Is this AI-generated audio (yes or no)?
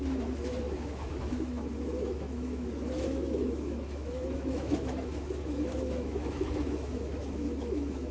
yes